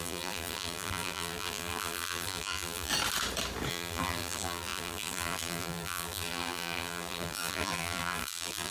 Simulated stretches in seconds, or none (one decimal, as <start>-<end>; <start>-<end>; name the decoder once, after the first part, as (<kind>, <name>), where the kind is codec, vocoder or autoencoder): 0.0-2.9 (vocoder, BigVGAN v2); 3.7-8.7